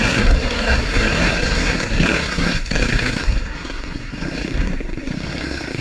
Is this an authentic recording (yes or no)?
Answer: no